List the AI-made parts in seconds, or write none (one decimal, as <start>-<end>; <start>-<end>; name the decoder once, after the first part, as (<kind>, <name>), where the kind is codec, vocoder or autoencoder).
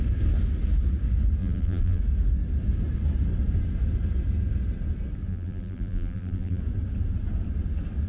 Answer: 1.4-2.0 (vocoder, BigVGAN v2); 5.3-6.6